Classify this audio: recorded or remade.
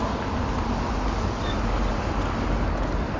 recorded